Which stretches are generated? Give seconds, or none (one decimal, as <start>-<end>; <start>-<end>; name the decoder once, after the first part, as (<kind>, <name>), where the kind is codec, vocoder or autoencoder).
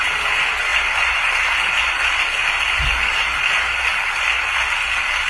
none